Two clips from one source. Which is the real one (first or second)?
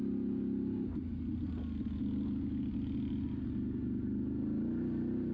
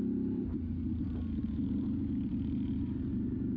first